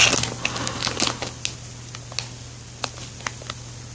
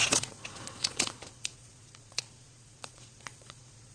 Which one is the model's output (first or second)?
second